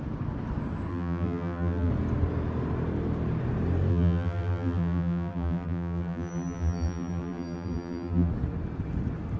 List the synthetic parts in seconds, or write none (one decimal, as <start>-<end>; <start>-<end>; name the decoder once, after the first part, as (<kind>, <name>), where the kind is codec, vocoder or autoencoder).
0.9-1.9 (vocoder, BigVGAN v2); 3.9-8.3